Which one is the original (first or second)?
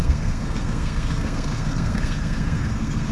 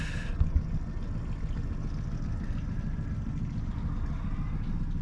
second